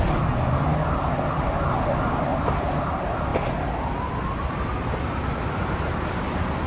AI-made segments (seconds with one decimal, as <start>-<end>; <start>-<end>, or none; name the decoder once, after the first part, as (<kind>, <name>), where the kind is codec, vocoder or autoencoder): none